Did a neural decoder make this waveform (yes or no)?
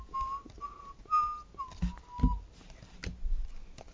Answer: no